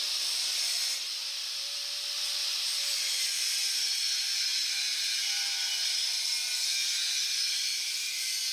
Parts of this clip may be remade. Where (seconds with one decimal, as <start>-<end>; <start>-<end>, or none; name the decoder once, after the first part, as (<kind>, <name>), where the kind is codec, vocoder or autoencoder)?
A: 0.0-2.3 (vocoder, BigVGAN v2); 7.2-8.5